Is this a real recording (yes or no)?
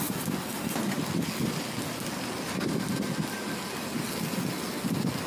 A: yes